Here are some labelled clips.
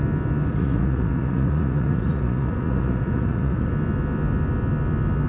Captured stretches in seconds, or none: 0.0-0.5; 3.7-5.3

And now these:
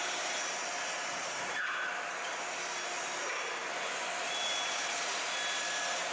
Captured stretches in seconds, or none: 0.0-3.6; 4.1-6.1

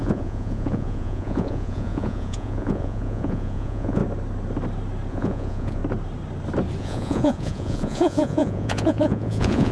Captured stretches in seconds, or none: 4.0-5.1; 5.8-6.8

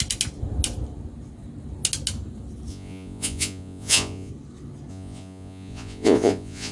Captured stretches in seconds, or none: 0.0-2.7; 4.3-4.9

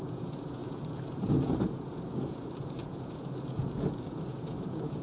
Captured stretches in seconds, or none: none